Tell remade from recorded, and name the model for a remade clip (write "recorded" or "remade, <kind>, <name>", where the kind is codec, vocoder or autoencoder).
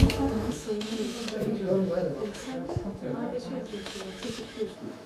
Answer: remade, autoencoder, DAC-VAE